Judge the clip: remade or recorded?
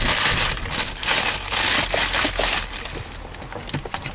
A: recorded